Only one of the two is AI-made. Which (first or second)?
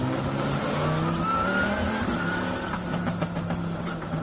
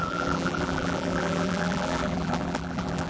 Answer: second